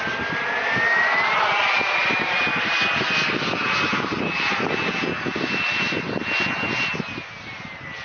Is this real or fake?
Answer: real